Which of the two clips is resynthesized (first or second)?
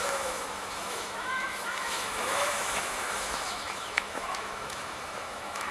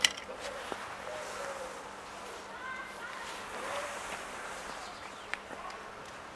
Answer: first